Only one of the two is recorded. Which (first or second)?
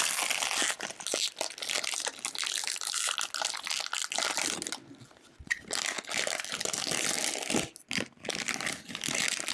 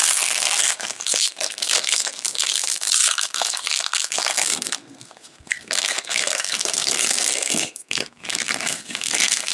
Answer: first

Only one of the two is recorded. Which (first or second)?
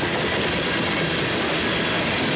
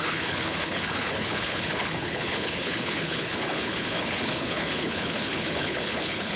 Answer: first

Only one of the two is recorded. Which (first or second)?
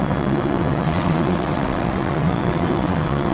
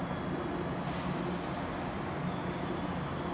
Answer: second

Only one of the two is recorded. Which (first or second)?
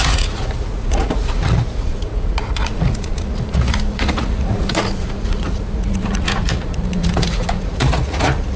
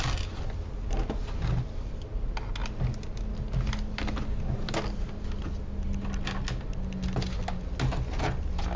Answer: second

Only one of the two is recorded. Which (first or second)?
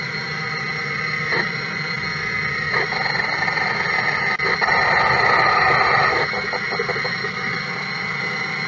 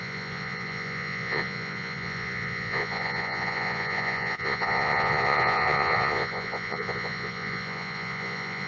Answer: first